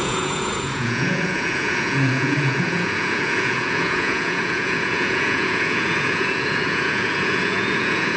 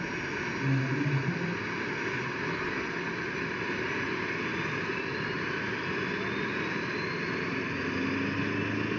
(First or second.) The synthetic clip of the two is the first